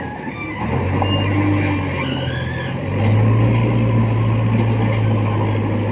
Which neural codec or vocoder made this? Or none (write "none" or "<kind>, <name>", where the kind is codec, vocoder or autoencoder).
none